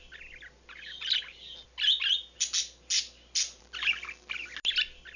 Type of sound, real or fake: real